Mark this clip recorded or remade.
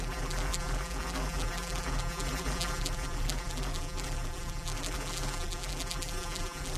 remade